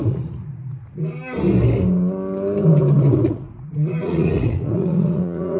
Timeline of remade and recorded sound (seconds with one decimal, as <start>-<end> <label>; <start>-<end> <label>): 0.0-1.0 remade; 1.0-3.1 recorded; 3.1-5.6 remade